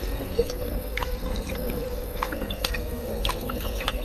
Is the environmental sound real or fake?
fake